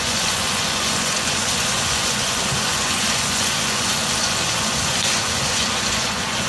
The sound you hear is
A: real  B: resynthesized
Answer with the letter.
B